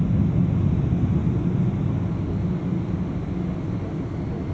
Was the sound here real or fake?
real